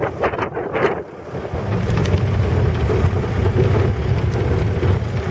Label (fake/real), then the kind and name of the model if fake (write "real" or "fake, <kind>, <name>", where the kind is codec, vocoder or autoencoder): real